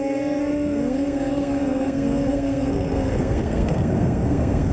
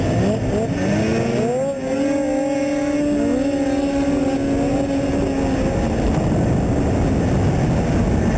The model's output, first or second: first